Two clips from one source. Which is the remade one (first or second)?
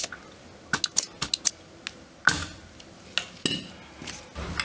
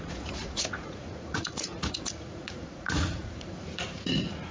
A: second